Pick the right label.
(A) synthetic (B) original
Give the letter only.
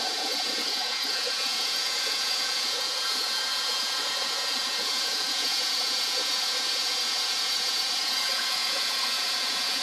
A